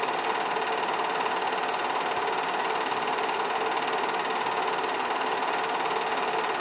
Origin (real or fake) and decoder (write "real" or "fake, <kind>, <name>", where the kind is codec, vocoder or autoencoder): real